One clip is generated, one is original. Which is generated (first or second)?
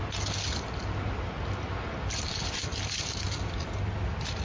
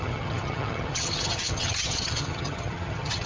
second